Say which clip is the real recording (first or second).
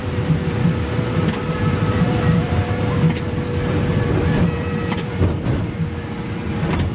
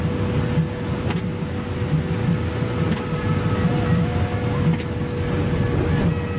second